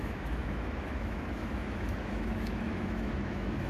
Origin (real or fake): fake